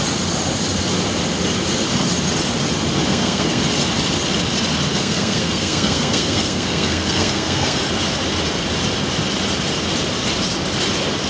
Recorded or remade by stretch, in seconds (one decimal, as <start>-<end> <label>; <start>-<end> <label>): 0.0-3.1 recorded; 3.1-3.6 remade; 3.6-4.9 recorded; 4.9-7.8 remade; 7.8-11.3 recorded